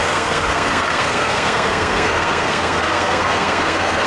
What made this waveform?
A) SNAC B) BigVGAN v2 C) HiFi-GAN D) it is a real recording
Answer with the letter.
A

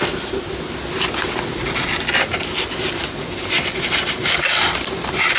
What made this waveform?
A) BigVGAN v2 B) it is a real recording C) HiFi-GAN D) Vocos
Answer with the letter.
B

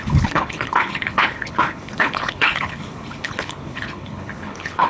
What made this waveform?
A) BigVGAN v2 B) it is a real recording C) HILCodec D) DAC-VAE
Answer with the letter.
C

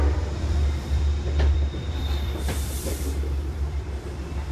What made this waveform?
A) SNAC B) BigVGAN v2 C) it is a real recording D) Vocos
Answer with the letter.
B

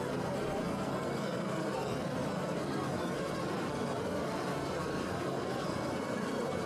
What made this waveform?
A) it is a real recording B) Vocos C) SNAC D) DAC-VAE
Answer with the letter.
C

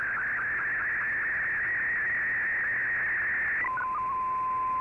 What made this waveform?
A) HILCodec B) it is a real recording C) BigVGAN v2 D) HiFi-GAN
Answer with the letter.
B